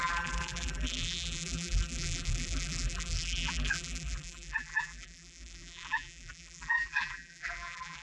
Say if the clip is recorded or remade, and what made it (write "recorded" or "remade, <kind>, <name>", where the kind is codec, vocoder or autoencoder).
remade, vocoder, BigVGAN v2